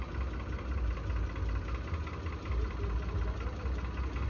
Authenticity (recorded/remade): recorded